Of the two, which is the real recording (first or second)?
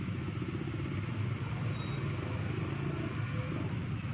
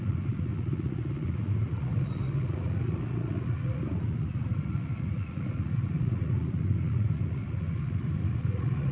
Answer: first